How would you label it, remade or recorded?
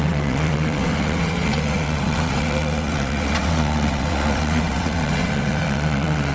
remade